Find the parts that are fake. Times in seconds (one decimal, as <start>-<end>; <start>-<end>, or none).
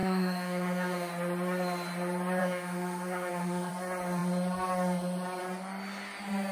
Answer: 0.0-1.1; 2.4-3.7